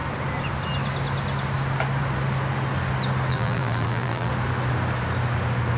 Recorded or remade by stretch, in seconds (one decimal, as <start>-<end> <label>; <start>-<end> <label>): 0.0-3.3 recorded; 3.3-4.3 remade; 4.3-5.8 recorded